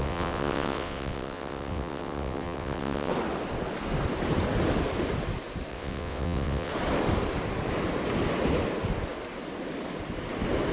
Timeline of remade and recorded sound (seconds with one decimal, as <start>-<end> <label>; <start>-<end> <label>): 0.0-3.1 remade; 3.1-5.7 recorded; 5.7-6.7 remade; 6.7-10.7 recorded